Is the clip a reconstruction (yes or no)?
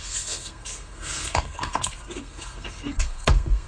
yes